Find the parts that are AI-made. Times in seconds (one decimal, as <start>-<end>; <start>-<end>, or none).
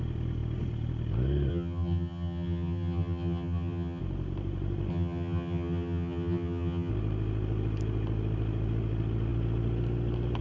1.5-4.0; 4.9-6.9